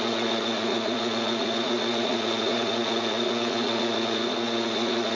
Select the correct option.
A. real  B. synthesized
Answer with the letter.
B